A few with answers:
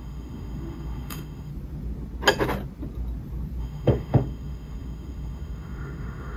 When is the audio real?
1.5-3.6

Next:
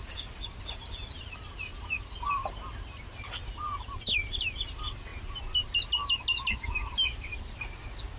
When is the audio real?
0.0-8.2

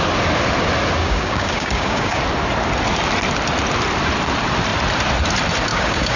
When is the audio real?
0.0-1.0; 2.2-5.7

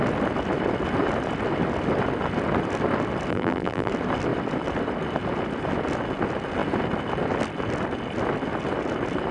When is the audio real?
0.0-3.3; 3.9-9.3

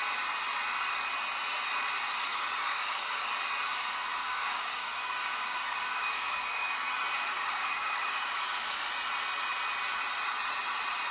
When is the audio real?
0.0-2.3; 3.3-4.2; 8.9-11.1